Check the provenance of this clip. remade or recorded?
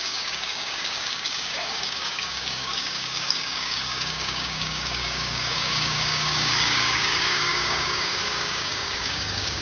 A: remade